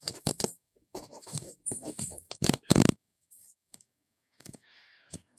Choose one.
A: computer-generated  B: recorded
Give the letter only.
A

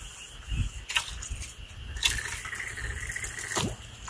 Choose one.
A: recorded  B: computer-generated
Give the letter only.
A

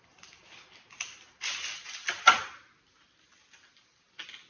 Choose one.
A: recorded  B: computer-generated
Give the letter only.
A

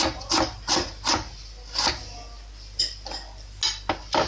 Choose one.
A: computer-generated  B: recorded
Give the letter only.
B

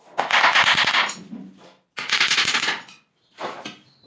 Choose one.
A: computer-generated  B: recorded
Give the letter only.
B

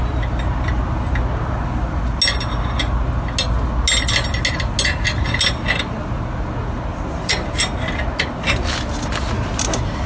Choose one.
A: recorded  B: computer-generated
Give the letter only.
A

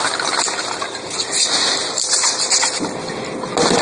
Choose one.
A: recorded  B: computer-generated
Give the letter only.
A